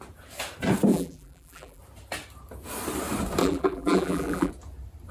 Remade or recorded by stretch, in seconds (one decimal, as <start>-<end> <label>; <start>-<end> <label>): 0.0-0.9 recorded; 0.9-1.8 remade; 1.8-3.4 recorded; 3.4-4.5 remade; 4.5-5.1 recorded